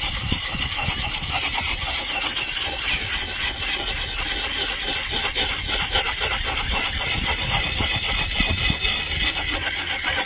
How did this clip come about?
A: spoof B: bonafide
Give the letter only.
B